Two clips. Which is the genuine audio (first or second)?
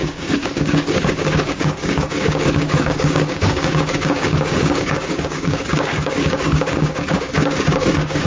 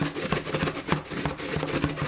second